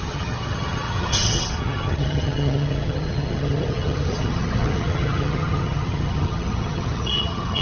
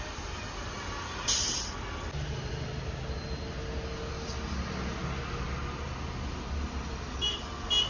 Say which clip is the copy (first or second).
first